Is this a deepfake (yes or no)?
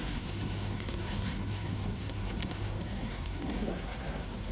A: yes